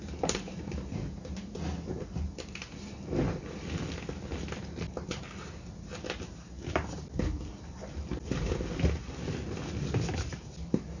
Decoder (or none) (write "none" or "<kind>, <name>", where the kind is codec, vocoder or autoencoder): none